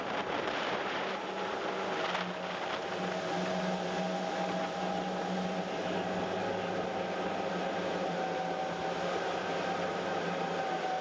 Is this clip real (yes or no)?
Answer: yes